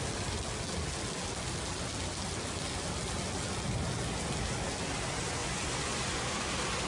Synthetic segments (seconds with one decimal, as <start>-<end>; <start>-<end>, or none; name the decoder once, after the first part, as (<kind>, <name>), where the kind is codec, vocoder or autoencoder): 5.4-6.3 (vocoder, Vocos)